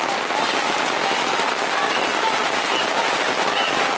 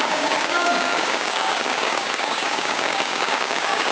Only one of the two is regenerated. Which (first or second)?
second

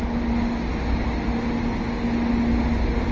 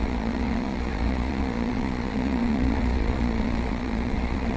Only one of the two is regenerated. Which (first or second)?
second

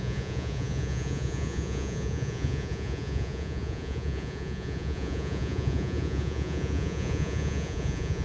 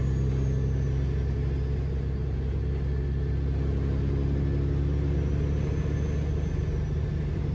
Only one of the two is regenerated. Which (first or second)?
first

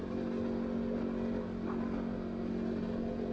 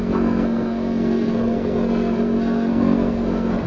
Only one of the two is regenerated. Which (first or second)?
second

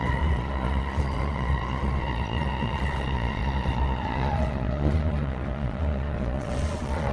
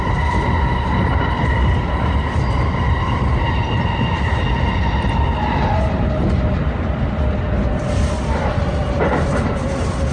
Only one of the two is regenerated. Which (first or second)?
first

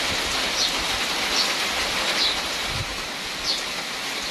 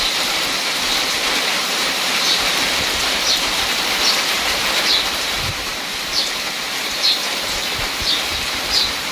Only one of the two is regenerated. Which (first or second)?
second